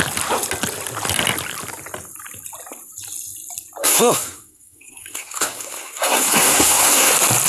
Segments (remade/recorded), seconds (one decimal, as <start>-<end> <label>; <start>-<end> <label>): 0.0-3.8 recorded; 3.8-7.1 remade; 7.1-7.5 recorded